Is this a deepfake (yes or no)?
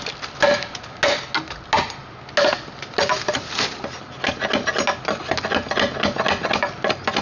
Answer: no